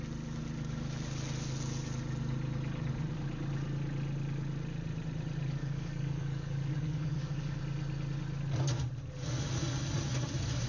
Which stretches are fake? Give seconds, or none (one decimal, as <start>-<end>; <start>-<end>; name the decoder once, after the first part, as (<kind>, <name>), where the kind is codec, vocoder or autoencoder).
5.6-7.6 (codec, DAC)